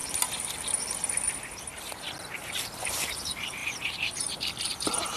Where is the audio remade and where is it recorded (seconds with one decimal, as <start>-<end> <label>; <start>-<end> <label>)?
0.0-2.5 recorded; 2.5-5.2 remade